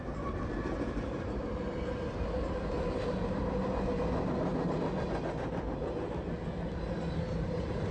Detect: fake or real real